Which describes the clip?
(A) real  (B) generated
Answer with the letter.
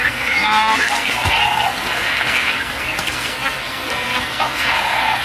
B